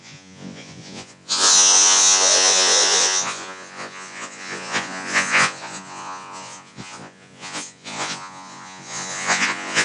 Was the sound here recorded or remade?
remade